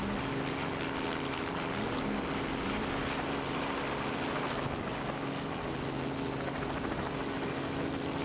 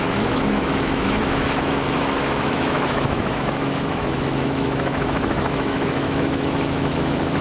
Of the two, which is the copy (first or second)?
second